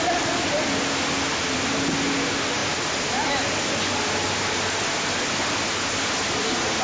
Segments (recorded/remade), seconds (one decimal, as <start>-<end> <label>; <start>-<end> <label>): 0.0-6.8 recorded